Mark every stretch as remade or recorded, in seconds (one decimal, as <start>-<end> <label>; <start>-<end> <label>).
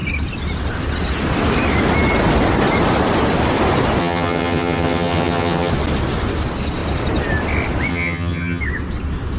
0.0-4.0 recorded; 4.0-5.7 remade; 5.7-7.9 recorded; 7.9-8.6 remade; 8.6-9.4 recorded